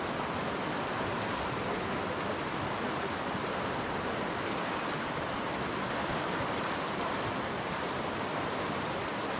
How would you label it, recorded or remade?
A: recorded